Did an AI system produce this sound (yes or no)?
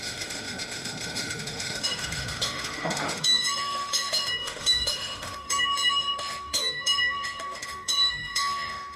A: yes